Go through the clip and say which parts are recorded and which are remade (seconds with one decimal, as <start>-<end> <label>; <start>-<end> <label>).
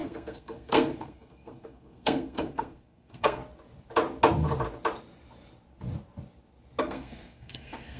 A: 0.0-3.4 remade; 3.4-6.8 recorded; 6.8-8.0 remade